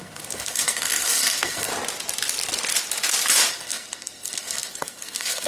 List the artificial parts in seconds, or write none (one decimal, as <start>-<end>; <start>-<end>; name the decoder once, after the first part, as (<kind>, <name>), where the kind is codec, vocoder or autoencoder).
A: 0.0-1.7 (codec, SNAC); 3.5-5.5